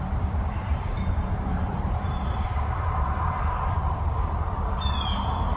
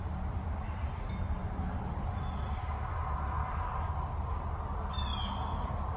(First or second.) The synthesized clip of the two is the first